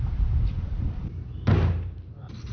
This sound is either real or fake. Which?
real